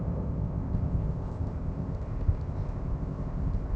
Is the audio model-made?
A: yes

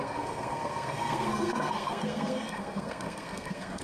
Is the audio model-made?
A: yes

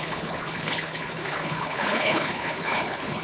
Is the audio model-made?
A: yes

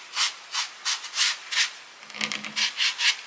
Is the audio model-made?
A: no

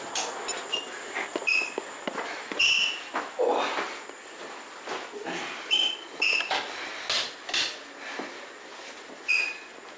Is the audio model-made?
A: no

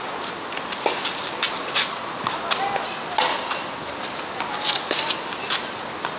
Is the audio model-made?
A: no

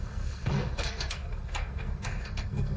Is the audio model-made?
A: yes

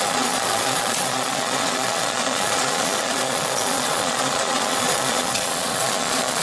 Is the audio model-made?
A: yes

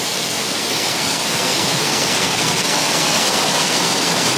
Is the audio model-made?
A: yes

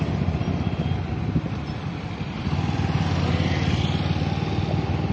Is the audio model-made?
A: no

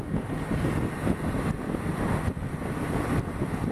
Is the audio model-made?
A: no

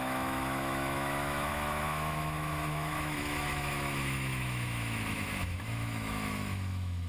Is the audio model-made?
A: yes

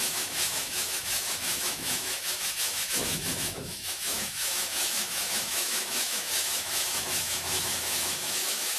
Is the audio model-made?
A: yes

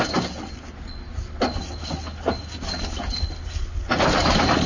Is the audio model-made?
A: no